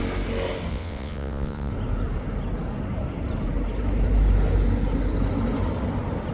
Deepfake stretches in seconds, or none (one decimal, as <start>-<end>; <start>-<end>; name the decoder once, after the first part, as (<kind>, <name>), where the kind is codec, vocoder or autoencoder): 0.7-1.7 (vocoder, WaveNeXt)